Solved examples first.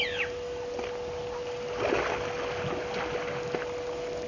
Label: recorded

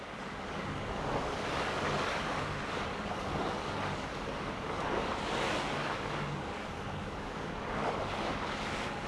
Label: remade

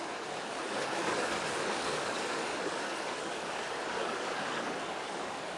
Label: remade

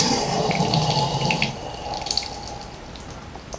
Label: recorded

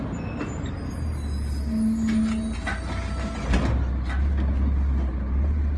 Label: recorded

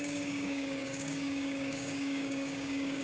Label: remade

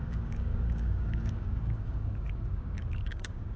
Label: remade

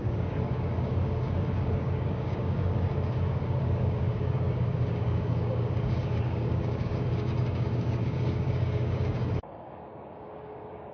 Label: remade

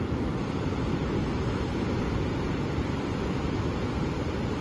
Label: recorded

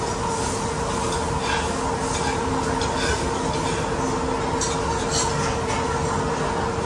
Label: recorded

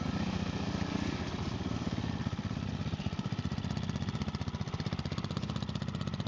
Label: recorded